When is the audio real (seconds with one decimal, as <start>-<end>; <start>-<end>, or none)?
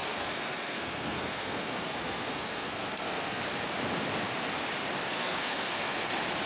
3.4-5.1; 6.1-6.5